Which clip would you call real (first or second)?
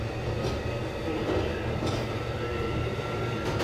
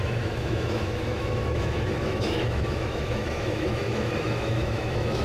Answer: first